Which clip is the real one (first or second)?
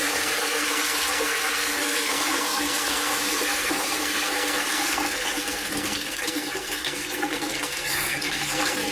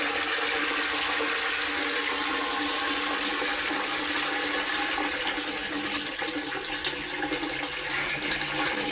second